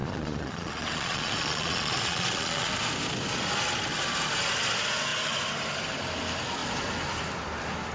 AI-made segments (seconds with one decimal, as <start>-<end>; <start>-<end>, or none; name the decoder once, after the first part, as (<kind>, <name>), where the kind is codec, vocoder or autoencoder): 0.0-2.7 (vocoder, Vocos)